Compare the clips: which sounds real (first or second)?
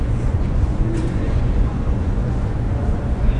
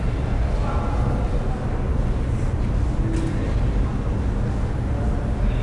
second